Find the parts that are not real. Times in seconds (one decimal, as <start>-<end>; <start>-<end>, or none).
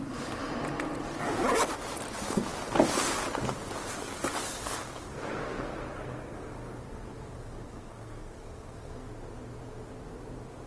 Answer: 5.1-9.1